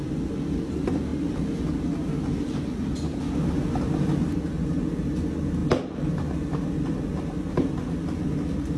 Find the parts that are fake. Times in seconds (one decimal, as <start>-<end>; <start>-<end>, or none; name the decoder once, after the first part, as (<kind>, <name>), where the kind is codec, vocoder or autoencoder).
none